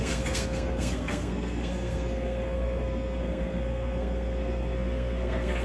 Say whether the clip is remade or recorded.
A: remade